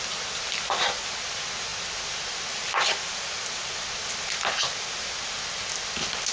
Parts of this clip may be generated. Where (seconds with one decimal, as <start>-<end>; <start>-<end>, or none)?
none